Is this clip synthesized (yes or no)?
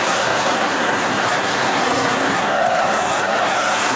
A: yes